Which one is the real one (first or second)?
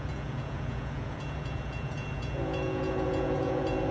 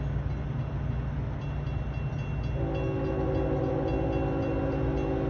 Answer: second